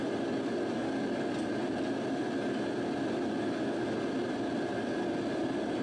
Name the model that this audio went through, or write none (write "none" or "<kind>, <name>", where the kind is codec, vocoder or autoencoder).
none